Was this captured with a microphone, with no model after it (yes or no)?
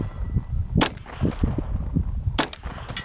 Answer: yes